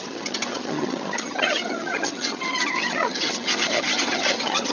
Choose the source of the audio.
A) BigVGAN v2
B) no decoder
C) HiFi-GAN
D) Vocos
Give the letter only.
C